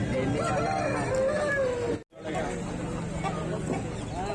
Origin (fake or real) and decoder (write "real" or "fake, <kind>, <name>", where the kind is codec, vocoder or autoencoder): real